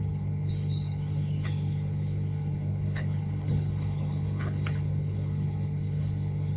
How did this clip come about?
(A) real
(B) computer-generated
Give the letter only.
B